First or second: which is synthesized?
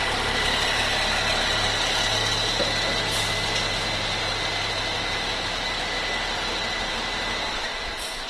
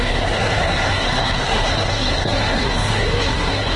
second